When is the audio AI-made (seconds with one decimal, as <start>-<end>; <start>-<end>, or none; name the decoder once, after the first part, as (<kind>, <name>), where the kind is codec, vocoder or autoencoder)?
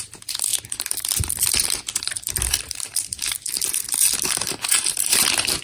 0.0-5.6 (vocoder, BigVGAN v2)